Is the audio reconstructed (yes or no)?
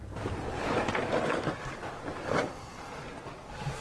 yes